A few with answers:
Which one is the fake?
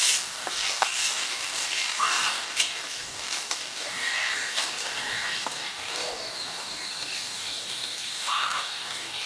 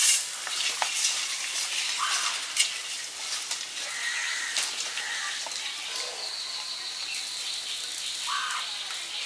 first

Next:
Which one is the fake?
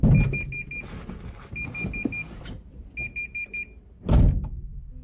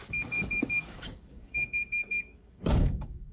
second